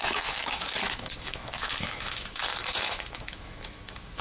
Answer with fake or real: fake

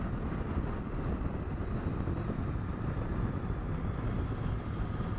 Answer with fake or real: real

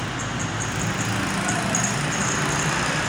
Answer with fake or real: real